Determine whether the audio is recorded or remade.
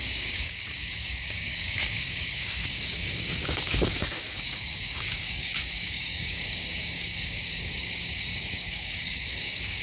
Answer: remade